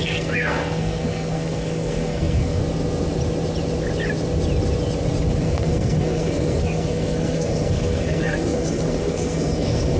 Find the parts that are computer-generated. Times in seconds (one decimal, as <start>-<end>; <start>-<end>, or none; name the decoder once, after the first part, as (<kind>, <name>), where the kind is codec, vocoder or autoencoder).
0.0-2.6 (codec, SNAC); 5.4-10.0